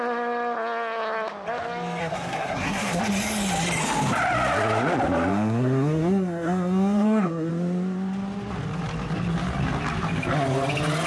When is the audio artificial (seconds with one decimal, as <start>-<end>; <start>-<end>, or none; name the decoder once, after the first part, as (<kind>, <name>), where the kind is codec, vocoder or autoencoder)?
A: 2.0-3.0 (codec, SNAC); 5.3-7.5